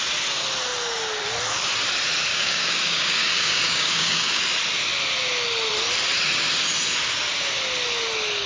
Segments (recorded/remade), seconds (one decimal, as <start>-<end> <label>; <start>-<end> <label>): 0.0-2.3 recorded; 2.3-4.4 remade; 4.4-8.5 recorded